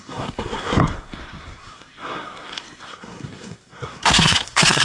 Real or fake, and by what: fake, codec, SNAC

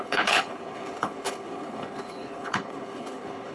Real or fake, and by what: fake, codec, HILCodec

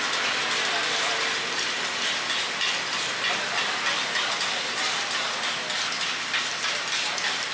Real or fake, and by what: real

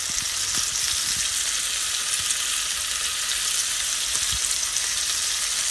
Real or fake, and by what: real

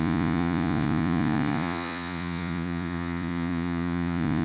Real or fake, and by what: fake, vocoder, Vocos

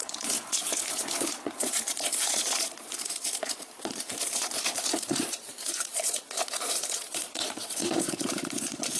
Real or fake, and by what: fake, vocoder, Vocos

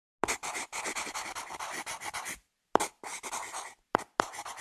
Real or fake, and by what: real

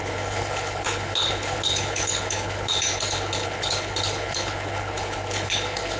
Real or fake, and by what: fake, codec, HILCodec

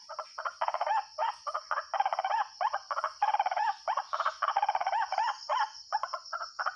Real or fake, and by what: fake, vocoder, Vocos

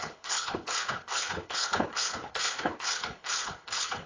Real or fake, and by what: fake, codec, HILCodec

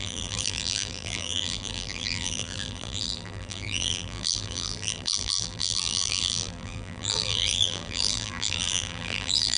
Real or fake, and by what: fake, vocoder, BigVGAN v2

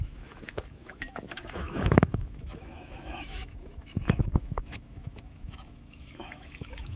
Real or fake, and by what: fake, autoencoder, DAC-VAE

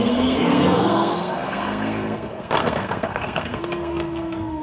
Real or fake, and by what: fake, codec, SNAC